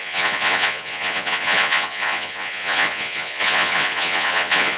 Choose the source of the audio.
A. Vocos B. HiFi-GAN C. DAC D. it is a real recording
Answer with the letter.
A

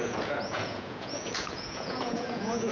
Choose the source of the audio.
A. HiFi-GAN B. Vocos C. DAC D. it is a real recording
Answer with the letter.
B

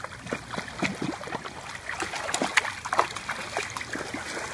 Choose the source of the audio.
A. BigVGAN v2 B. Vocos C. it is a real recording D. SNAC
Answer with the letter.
C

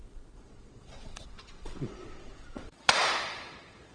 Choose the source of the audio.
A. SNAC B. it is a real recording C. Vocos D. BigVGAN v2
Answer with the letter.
C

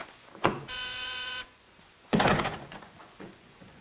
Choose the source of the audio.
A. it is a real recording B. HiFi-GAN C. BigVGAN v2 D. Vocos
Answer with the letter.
D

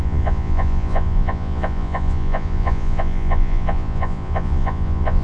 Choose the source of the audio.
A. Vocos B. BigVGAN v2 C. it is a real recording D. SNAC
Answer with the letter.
A